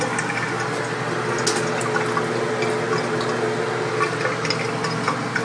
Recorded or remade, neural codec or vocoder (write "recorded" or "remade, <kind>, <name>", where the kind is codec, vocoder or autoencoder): recorded